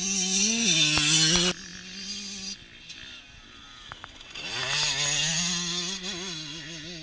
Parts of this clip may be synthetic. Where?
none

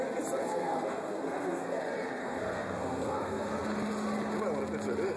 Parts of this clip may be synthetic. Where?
0.4-1.8 (codec, SNAC); 2.2-3.5

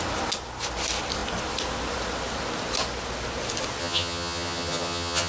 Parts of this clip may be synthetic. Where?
3.8-5.3 (vocoder, HiFi-GAN)